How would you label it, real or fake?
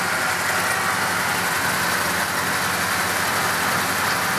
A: real